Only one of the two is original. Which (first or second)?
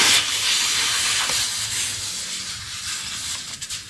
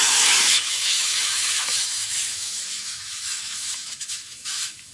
first